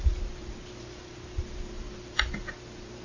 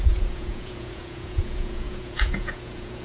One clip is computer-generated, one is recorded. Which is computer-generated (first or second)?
second